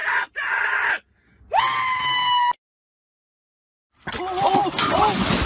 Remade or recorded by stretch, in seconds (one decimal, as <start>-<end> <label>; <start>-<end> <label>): 0.0-5.5 recorded